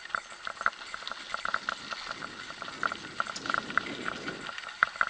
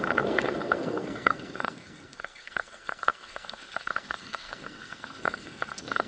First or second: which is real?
first